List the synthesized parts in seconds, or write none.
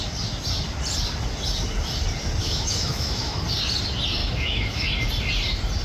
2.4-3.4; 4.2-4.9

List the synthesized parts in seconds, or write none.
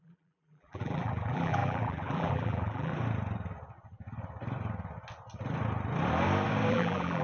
0.0-2.9; 6.7-7.2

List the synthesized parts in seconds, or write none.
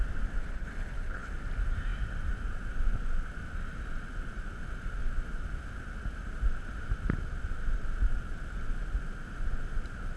0.5-1.3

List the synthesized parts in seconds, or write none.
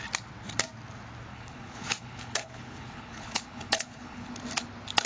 1.3-4.3